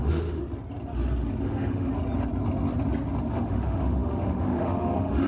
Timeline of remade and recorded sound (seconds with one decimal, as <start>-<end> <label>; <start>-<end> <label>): 0.0-0.4 remade; 0.4-1.4 recorded; 1.4-1.9 remade; 1.9-3.3 recorded; 3.3-5.3 remade